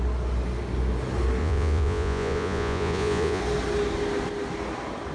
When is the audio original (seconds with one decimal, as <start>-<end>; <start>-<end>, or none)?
0.0-1.4; 3.4-5.1